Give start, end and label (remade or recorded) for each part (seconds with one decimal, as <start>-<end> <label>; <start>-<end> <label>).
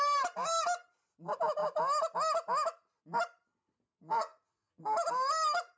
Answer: 0.0-3.9 recorded; 3.9-4.8 remade; 4.8-5.8 recorded